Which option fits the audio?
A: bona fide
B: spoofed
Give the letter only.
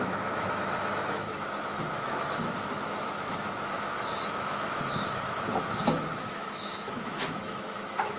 B